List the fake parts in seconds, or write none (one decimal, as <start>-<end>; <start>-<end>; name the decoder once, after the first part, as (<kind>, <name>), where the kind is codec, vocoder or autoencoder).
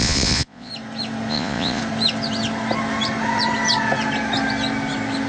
0.0-0.7 (vocoder, Vocos); 1.3-1.8